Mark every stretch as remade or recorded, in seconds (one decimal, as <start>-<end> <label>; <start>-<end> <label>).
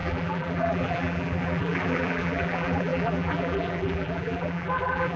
0.0-5.2 remade